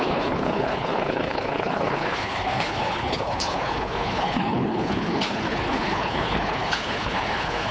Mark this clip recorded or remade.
remade